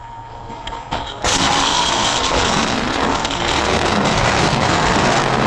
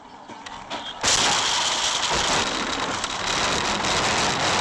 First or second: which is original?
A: second